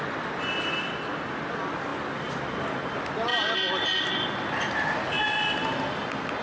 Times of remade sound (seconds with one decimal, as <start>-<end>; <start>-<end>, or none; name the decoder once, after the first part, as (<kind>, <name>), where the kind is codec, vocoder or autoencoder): none